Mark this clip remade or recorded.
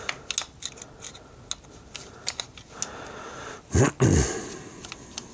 recorded